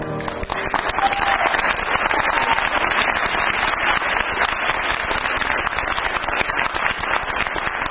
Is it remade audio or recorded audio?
recorded